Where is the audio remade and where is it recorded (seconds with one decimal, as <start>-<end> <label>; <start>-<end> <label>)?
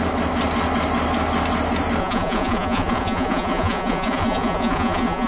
0.0-2.0 recorded; 2.0-5.3 remade